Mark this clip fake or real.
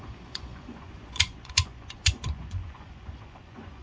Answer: fake